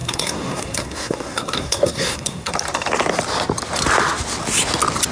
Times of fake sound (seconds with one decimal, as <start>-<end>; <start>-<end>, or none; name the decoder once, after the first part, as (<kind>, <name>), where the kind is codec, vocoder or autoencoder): 0.0-2.5 (codec, SNAC)

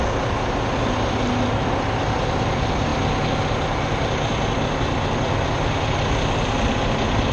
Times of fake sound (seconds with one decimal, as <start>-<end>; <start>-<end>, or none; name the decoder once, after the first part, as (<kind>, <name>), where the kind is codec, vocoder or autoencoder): none

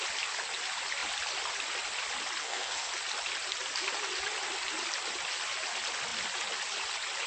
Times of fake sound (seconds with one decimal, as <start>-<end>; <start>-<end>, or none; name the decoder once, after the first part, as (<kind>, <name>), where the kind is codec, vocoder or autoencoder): 2.4-2.9 (codec, SNAC)

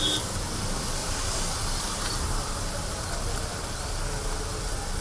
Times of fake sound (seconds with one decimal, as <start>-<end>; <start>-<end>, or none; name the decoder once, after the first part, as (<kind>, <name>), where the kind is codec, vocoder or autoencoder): 1.0-4.0 (vocoder, BigVGAN v2)

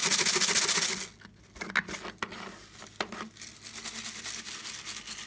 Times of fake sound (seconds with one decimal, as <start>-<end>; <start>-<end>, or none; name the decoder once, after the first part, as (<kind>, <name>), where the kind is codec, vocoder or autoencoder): none

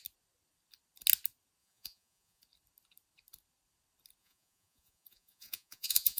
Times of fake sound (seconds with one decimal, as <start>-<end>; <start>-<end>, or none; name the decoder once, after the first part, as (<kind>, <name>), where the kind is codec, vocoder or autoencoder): 1.6-2.4 (vocoder, Vocos); 4.2-6.2

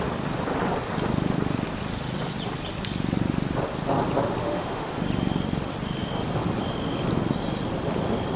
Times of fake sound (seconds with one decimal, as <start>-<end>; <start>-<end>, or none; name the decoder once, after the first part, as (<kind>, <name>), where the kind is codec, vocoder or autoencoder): 4.4-4.9 (autoencoder, DAC-VAE)